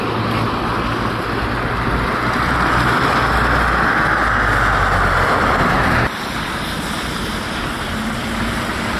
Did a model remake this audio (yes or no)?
no